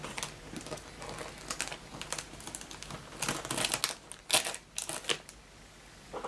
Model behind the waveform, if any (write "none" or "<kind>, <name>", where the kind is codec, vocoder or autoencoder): none